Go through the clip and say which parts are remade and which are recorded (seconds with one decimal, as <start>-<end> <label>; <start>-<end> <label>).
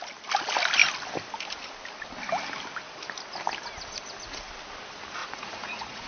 0.0-5.2 recorded; 5.2-6.1 remade